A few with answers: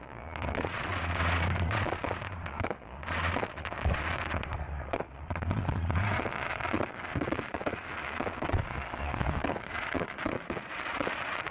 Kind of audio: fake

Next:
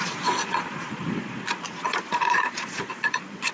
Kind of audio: fake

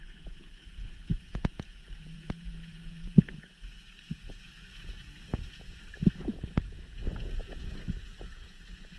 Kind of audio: fake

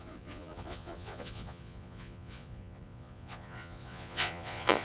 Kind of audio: fake